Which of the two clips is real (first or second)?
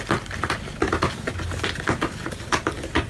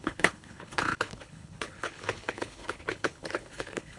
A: first